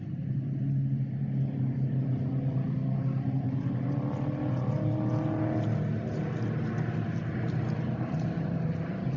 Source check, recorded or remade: recorded